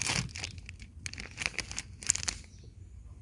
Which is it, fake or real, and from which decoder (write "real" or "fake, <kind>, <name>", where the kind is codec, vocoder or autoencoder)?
real